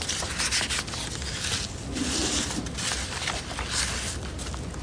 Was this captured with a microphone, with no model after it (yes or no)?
yes